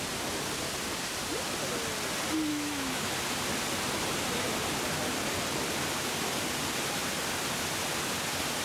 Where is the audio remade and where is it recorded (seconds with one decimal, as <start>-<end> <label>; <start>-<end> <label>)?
0.0-2.5 recorded; 2.5-3.1 remade; 3.1-8.6 recorded